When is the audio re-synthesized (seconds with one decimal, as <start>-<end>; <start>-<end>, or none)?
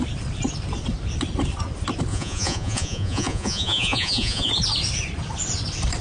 2.1-4.5